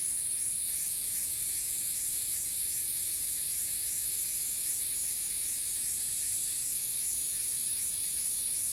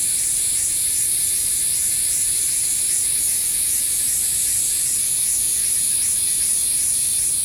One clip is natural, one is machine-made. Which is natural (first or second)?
second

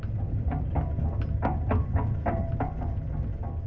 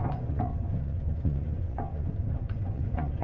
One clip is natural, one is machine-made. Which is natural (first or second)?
first